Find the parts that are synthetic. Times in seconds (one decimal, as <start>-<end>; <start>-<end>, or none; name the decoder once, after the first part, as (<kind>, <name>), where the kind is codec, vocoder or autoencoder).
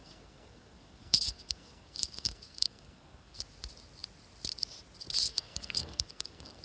0.0-3.4 (codec, SNAC); 5.3-6.6